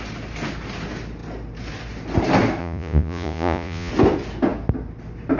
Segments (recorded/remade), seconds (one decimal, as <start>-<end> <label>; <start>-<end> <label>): 0.0-2.6 recorded; 2.6-3.9 remade; 3.9-5.4 recorded